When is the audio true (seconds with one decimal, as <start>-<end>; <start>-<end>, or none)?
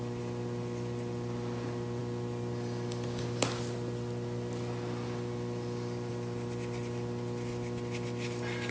0.0-8.7